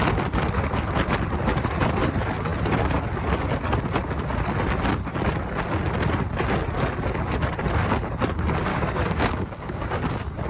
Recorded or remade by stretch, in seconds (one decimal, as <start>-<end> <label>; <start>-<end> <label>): 0.0-8.7 recorded; 8.7-10.0 remade; 10.0-10.5 recorded